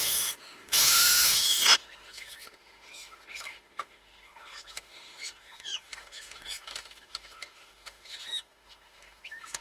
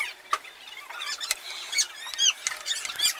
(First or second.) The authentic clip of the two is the second